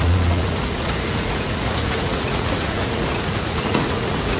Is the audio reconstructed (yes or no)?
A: yes